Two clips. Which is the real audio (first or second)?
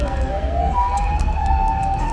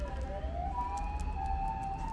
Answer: second